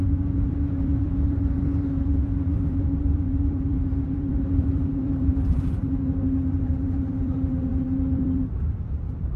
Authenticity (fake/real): fake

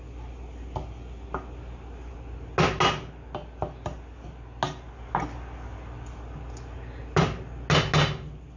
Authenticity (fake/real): real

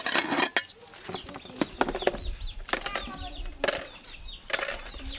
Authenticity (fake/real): real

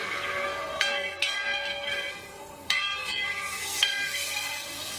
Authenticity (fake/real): fake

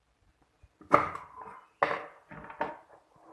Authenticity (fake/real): real